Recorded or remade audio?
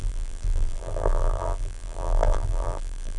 remade